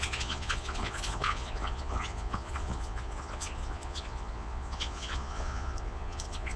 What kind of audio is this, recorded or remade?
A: remade